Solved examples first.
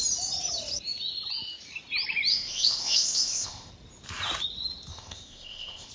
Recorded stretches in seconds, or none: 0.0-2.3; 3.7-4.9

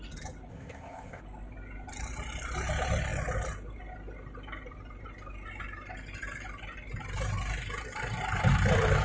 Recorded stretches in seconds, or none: 0.0-0.5; 1.2-9.0

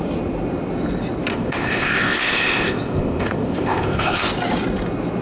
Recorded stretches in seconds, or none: 0.0-1.3; 4.3-5.2

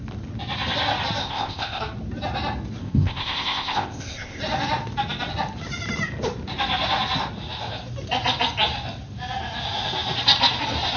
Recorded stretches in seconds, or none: 0.0-1.2; 1.8-2.8; 4.4-11.0